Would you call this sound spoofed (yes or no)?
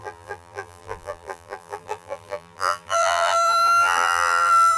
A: yes